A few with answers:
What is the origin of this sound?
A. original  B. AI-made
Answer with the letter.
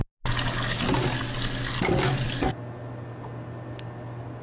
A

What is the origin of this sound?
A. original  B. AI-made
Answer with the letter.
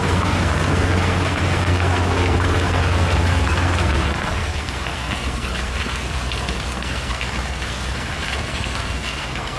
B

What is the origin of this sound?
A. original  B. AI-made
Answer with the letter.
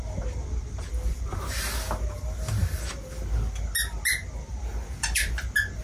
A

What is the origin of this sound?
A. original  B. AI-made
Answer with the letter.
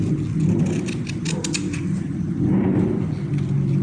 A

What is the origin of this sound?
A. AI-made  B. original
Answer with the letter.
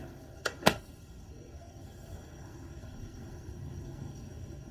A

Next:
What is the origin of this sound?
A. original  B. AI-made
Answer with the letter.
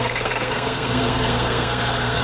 B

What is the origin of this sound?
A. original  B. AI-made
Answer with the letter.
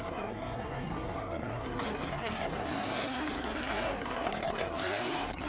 B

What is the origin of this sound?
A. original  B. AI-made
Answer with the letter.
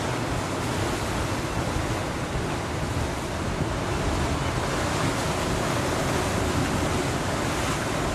A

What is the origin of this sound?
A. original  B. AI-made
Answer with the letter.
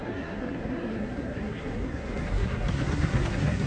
B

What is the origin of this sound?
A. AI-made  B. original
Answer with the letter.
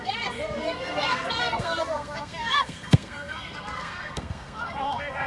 A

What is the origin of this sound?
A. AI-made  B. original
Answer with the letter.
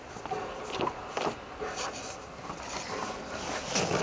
B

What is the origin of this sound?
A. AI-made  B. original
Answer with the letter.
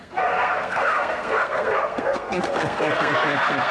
A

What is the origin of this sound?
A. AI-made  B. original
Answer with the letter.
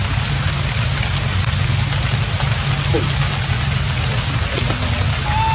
B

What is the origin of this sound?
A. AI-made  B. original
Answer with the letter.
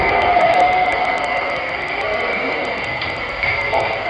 A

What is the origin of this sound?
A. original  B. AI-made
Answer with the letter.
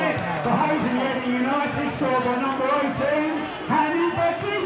A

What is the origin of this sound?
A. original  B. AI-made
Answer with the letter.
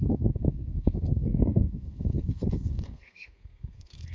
B